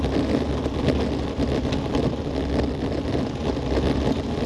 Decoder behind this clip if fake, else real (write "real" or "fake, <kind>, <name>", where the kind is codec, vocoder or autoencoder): real